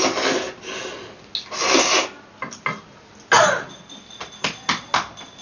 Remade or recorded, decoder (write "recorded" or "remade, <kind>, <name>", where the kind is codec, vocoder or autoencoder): recorded